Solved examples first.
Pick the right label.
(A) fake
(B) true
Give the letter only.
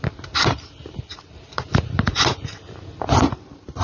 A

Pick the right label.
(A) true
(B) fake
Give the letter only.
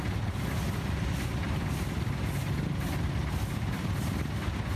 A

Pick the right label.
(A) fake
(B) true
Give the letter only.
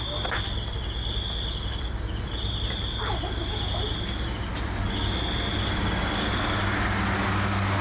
B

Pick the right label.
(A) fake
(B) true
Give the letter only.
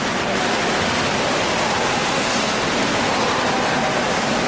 B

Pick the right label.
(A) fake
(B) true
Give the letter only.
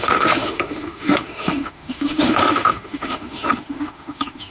A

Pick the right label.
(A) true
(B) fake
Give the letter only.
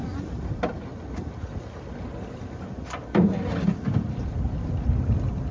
A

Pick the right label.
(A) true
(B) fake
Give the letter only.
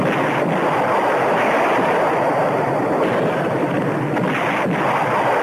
A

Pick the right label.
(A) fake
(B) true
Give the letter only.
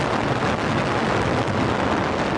B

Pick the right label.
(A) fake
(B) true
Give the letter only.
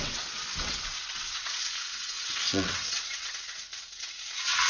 A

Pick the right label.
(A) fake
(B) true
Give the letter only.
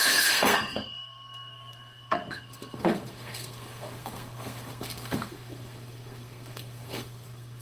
A